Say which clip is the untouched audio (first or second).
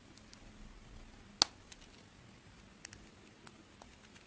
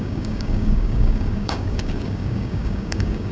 first